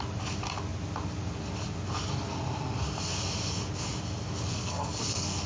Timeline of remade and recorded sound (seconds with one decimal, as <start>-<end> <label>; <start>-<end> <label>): 0.0-4.5 recorded; 4.5-5.5 remade